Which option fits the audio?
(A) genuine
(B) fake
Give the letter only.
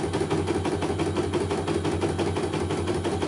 A